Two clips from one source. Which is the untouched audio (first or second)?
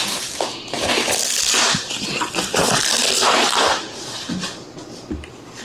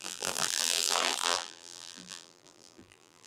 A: first